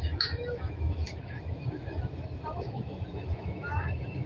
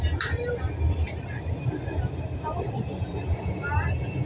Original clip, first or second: second